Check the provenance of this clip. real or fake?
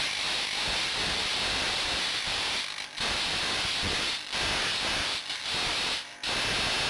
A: real